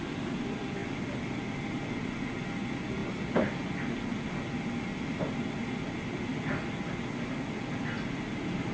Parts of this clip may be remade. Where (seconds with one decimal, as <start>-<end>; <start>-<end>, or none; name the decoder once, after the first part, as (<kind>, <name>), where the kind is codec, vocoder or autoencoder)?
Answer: none